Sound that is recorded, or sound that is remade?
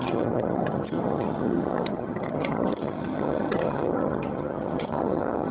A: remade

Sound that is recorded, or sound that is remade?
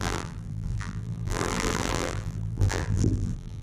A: remade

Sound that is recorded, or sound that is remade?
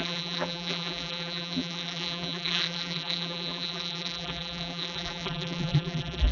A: remade